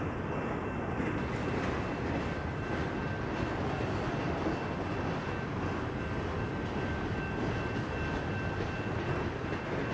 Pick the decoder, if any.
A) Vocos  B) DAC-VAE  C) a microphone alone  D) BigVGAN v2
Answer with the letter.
C